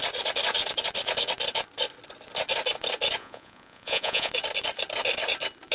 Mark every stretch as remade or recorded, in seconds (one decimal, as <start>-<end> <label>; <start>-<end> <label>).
0.0-3.2 recorded; 3.2-4.3 remade; 4.3-5.7 recorded